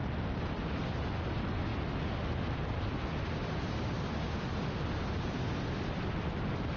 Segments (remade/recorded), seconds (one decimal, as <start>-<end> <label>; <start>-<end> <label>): 0.0-0.5 remade; 0.5-6.8 recorded